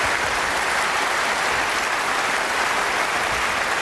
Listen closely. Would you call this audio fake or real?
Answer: real